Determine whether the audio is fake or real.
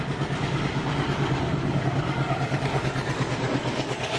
fake